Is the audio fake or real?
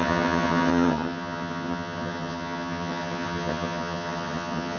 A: fake